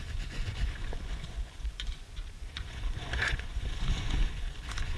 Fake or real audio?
fake